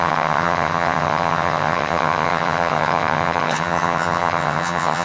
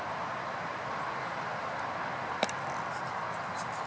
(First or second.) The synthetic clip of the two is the first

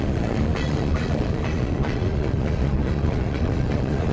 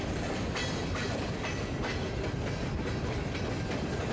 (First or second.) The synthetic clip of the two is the first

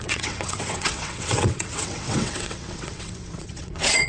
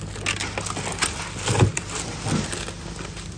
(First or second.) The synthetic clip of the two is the first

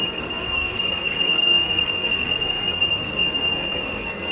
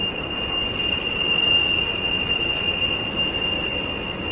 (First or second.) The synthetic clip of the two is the first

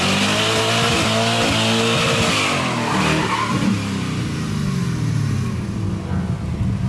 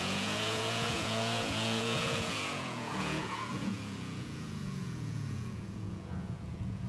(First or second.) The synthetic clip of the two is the second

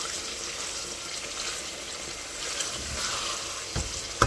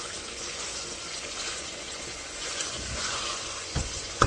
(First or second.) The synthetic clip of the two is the second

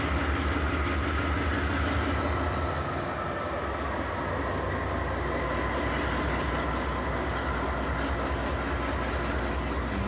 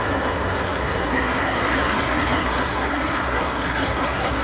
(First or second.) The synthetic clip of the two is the second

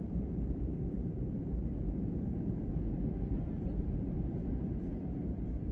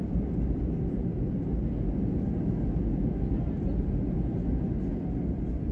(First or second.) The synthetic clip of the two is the first